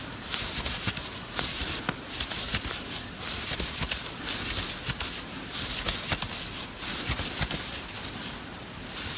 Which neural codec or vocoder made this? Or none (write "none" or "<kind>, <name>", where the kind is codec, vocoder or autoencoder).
none